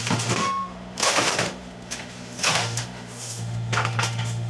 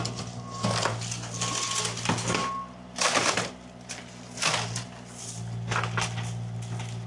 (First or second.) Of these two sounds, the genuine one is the second